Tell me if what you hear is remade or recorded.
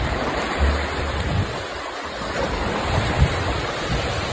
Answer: recorded